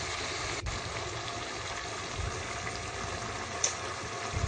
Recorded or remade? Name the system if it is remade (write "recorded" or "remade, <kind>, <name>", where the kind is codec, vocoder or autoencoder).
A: recorded